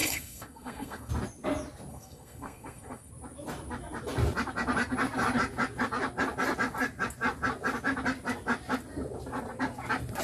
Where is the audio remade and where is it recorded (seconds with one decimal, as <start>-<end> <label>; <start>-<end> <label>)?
0.0-1.1 remade; 1.1-1.9 recorded; 1.9-3.1 remade; 3.1-10.2 recorded